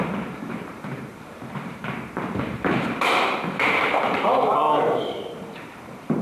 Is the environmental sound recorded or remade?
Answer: remade